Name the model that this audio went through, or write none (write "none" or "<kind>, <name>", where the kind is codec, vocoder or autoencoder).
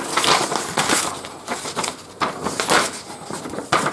none